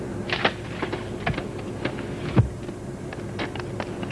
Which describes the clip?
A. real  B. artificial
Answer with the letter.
A